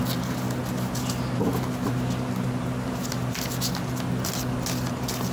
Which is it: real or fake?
real